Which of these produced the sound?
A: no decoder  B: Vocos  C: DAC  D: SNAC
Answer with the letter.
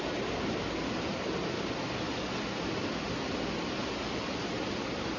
A